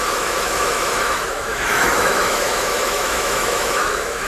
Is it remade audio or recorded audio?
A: remade